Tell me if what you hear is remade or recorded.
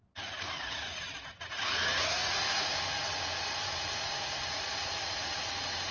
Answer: remade